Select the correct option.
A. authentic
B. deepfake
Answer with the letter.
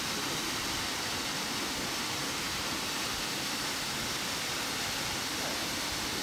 A